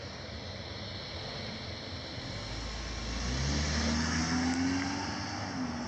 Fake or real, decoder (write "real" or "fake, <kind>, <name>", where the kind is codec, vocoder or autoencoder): real